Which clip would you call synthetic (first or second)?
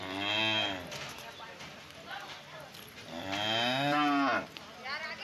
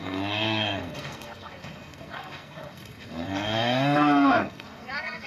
second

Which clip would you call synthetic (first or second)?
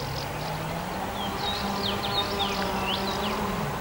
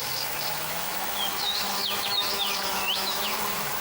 second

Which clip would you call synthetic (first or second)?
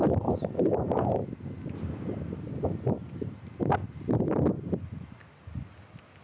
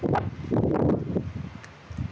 first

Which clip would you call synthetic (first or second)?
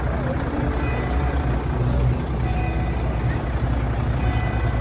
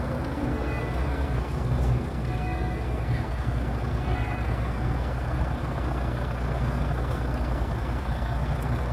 second